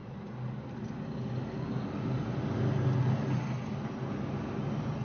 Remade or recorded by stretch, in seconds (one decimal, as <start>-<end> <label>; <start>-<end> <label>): 0.0-5.0 recorded